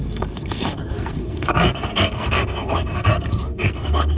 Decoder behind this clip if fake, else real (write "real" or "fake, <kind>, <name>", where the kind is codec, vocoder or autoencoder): fake, codec, SNAC